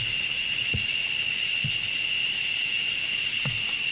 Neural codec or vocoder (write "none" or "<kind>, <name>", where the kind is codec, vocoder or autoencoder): none